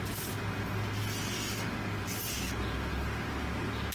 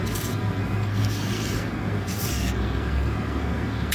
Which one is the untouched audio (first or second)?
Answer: first